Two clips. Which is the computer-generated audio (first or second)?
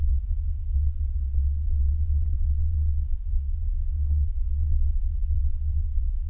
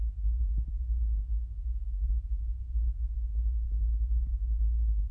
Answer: first